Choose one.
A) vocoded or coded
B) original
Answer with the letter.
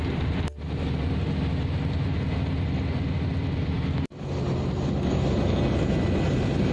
B